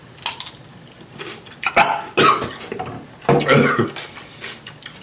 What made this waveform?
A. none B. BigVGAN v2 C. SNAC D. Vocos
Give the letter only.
A